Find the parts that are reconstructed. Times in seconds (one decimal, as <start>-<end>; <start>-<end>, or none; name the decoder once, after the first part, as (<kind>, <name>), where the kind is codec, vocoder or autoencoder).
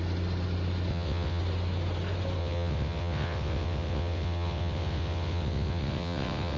0.9-1.4 (vocoder, WaveNeXt); 2.4-6.6